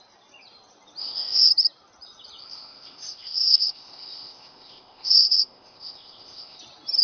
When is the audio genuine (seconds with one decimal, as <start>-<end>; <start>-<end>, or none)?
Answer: 0.0-1.0; 1.5-2.4; 6.6-7.0